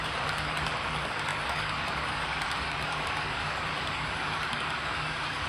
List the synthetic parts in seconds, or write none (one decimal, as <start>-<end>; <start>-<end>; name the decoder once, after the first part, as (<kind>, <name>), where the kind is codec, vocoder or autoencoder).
0.0-5.5 (codec, DAC)